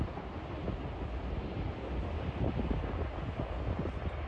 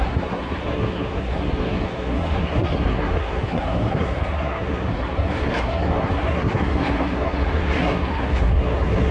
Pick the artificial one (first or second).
second